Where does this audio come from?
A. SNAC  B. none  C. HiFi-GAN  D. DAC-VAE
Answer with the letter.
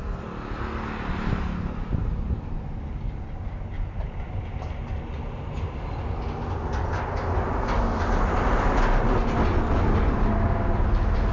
B